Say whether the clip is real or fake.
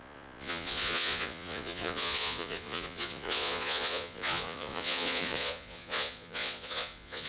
fake